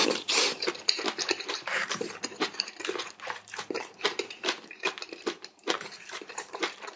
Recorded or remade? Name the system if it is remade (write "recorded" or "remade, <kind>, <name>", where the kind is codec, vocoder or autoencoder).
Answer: remade, vocoder, BigVGAN v2